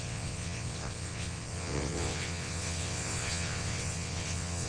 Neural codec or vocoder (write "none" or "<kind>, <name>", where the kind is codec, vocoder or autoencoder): vocoder, WaveNeXt